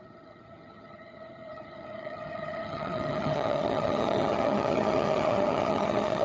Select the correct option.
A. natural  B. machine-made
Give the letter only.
B